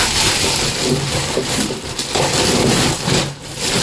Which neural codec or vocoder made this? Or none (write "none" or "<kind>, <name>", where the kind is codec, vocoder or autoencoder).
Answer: none